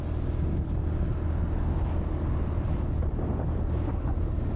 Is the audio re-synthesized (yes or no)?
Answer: no